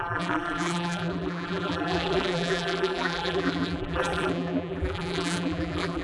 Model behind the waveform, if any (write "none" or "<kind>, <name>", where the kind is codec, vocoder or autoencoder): vocoder, BigVGAN v2